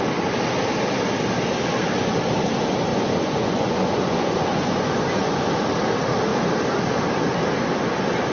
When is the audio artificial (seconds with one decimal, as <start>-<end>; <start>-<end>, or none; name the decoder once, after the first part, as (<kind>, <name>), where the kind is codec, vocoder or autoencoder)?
2.9-5.5 (vocoder, Vocos)